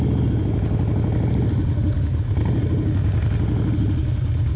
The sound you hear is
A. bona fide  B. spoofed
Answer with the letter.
A